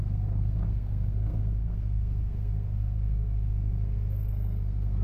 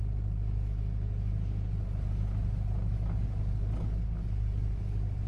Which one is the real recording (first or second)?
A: second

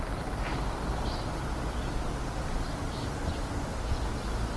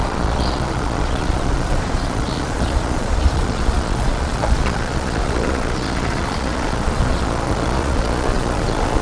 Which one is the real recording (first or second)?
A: first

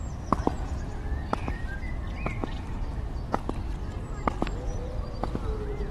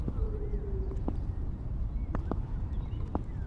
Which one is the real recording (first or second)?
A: first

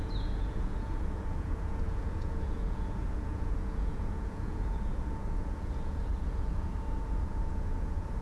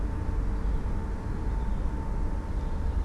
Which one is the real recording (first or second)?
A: second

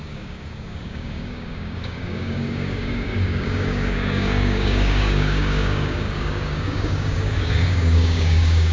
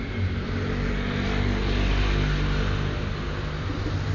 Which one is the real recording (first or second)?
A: second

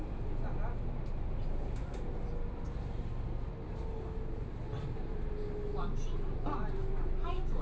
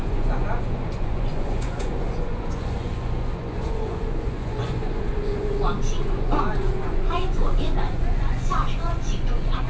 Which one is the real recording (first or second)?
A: first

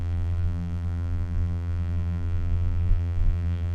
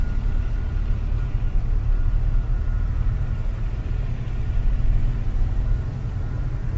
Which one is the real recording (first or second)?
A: second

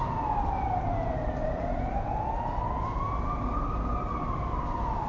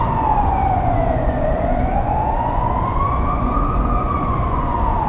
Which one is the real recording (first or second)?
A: first